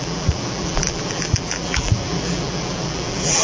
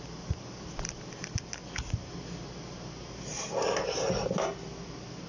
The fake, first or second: first